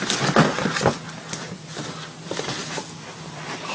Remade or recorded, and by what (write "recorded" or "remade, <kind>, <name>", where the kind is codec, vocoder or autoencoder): recorded